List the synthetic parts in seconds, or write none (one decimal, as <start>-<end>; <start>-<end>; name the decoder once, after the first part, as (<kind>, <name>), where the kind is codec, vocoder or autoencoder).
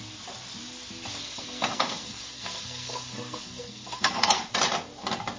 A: 1.2-4.4 (codec, SNAC)